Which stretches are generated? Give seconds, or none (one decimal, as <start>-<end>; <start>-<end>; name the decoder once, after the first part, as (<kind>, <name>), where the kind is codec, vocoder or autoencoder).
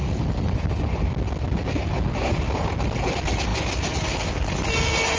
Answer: none